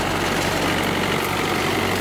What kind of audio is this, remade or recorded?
recorded